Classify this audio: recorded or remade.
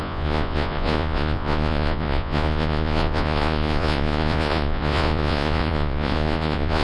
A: remade